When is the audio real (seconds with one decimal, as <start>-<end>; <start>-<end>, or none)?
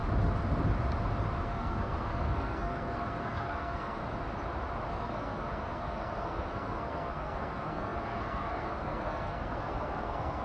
0.0-1.4; 4.0-4.9